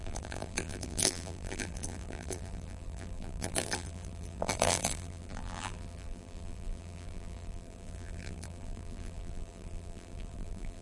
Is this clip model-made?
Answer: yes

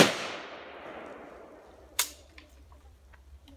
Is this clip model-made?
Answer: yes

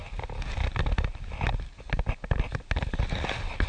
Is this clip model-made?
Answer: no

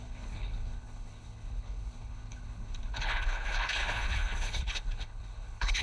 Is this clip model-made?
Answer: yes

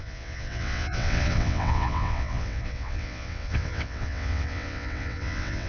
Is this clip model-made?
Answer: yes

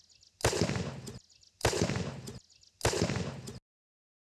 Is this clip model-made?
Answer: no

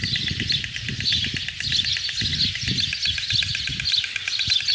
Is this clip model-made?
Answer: no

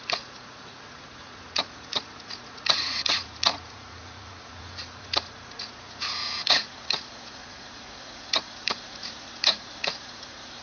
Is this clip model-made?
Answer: yes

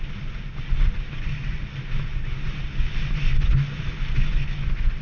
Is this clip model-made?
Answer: no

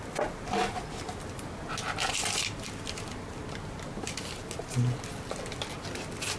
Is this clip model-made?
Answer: no